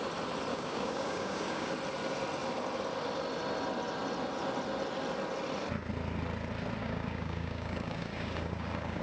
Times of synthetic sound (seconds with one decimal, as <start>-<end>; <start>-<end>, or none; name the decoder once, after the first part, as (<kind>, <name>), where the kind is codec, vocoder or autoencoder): 0.5-1.7 (codec, DAC); 6.8-9.0